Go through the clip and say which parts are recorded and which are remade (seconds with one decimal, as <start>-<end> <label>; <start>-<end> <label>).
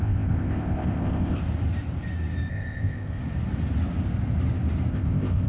0.0-1.4 remade; 1.4-2.5 recorded; 2.5-3.2 remade; 3.2-4.9 recorded; 4.9-5.5 remade